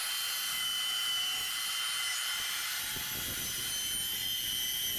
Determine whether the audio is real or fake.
real